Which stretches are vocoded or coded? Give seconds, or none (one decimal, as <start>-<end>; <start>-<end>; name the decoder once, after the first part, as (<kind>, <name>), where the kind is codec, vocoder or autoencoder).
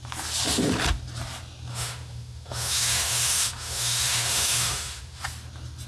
1.7-5.2 (autoencoder, DAC-VAE)